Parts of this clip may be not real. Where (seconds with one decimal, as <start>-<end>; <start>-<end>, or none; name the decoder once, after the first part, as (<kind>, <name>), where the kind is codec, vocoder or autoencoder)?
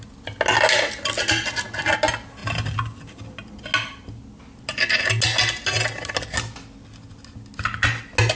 none